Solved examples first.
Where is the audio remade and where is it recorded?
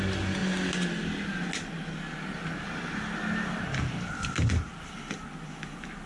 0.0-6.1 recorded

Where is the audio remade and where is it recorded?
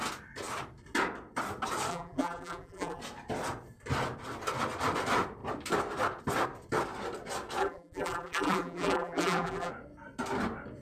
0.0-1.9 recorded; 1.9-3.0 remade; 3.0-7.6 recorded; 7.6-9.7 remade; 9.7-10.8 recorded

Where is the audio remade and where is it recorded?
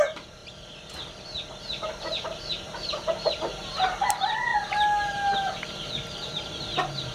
0.0-0.4 remade; 0.4-1.6 recorded; 1.6-7.1 remade